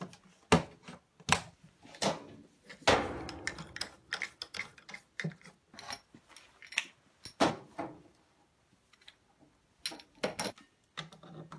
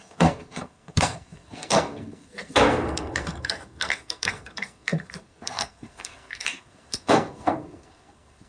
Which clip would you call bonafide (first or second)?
first